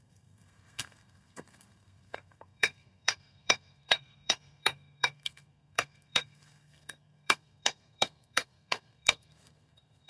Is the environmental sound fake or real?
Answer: fake